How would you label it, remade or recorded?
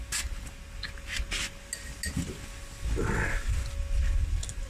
recorded